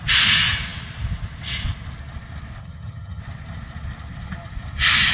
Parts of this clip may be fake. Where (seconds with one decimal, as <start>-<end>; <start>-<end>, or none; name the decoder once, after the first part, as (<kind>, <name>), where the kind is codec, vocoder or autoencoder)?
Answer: 2.6-3.2 (vocoder, HiFi-GAN)